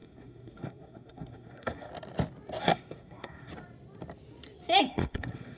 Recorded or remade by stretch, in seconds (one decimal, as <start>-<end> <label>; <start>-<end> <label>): 0.0-1.9 remade; 1.9-2.6 recorded; 2.6-3.5 remade; 3.5-4.8 recorded; 4.8-5.6 remade